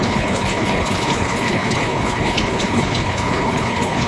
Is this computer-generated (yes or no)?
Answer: yes